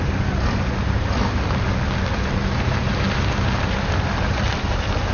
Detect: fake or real real